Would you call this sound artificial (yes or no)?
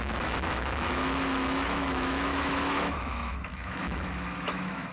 yes